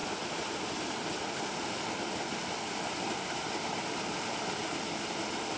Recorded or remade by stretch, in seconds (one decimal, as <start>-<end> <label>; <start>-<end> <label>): 0.0-5.6 recorded